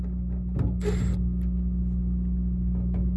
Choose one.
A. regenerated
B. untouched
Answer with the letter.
B